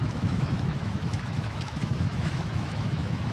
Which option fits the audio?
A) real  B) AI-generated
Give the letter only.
B